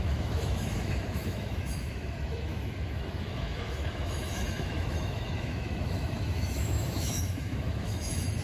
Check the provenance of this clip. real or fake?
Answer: fake